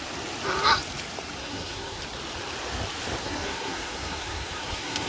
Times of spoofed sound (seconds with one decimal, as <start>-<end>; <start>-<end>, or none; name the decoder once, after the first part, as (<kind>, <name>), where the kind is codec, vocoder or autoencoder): 1.4-2.0 (codec, SNAC); 3.2-5.1